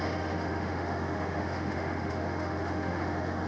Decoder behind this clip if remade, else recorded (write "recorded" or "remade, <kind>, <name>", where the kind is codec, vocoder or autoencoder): remade, autoencoder, DAC-VAE